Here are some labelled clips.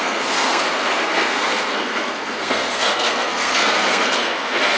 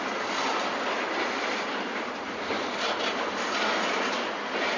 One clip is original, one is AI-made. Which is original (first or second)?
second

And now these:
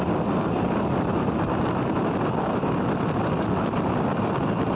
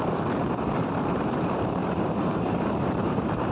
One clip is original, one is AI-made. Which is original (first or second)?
first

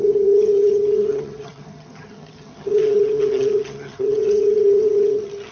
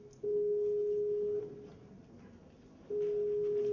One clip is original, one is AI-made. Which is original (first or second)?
second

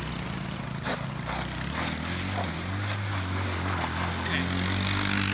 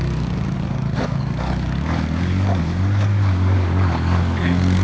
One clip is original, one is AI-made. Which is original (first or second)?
first